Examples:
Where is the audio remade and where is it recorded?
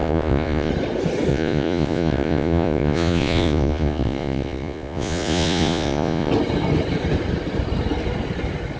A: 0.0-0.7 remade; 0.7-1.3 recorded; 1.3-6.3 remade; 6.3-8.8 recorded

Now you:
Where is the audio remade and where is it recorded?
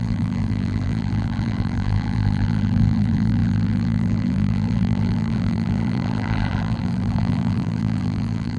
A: 0.0-8.6 remade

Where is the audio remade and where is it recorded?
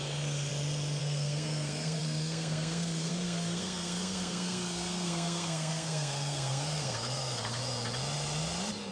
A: 0.0-0.5 remade; 0.5-1.0 recorded; 1.0-7.6 remade; 7.6-8.9 recorded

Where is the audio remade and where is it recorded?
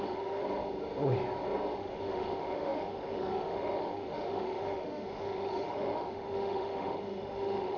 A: 0.0-0.4 remade; 0.4-1.8 recorded; 1.8-7.8 remade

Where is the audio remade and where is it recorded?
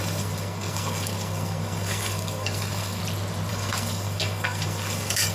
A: 0.0-3.0 remade; 3.0-3.5 recorded; 3.5-5.3 remade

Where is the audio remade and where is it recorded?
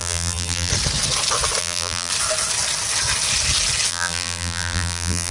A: 0.0-0.7 remade; 0.7-1.6 recorded; 1.6-2.1 remade; 2.1-3.9 recorded; 3.9-5.3 remade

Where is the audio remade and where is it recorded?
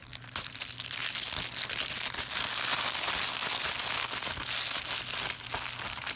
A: 0.0-6.2 recorded